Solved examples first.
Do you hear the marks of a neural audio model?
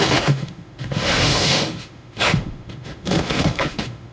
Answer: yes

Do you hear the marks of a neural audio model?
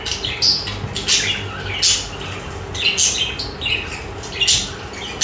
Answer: no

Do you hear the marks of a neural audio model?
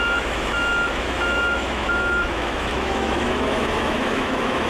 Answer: yes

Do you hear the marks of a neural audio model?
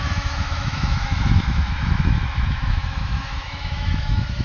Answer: yes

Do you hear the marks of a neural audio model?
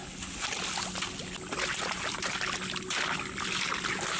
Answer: no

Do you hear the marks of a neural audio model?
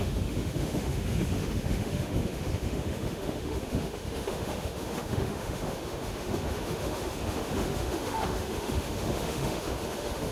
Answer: yes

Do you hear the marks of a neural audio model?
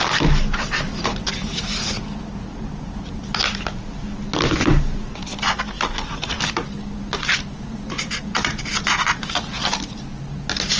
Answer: no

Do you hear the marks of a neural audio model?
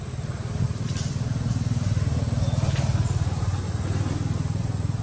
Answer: no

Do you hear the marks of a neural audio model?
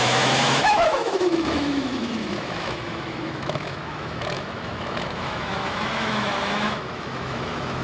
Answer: yes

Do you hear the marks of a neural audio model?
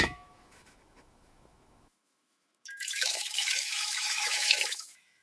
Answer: yes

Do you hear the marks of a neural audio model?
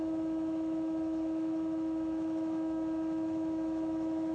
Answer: yes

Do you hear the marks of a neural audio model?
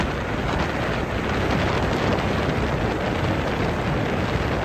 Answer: no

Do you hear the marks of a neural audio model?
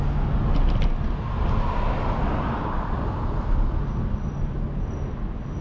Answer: no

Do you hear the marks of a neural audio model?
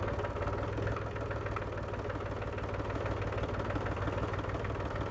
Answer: no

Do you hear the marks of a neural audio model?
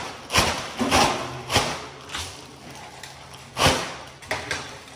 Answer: no